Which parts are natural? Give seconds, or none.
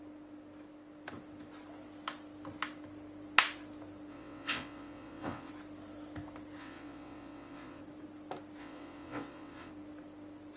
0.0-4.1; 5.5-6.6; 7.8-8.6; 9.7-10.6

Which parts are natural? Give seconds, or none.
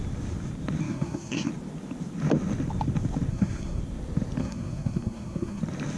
0.0-0.8; 1.5-3.3; 3.8-4.4; 5.6-6.0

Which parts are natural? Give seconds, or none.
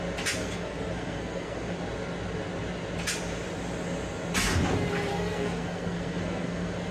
0.0-0.4; 1.8-5.1